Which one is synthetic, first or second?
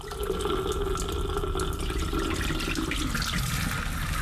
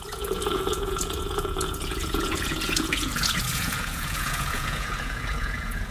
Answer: second